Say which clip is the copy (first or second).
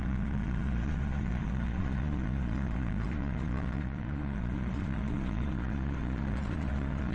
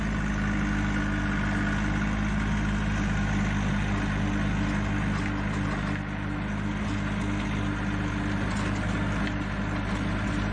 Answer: first